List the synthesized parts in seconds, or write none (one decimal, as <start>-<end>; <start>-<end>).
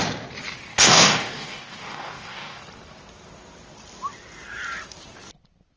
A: 0.7-2.6